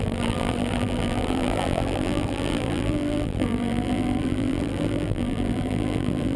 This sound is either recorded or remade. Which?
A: remade